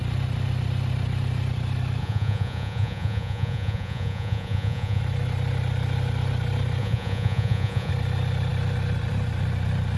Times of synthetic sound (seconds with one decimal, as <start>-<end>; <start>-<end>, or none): 2.0-5.0; 6.8-7.9